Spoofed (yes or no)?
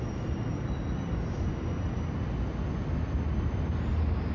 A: no